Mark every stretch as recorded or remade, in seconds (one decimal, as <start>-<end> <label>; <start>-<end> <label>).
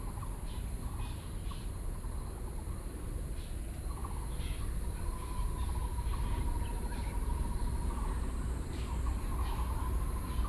0.0-10.5 recorded